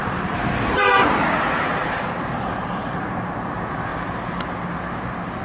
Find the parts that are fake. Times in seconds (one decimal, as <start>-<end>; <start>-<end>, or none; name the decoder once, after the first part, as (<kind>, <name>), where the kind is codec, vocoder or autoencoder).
0.0-3.2 (vocoder, BigVGAN v2)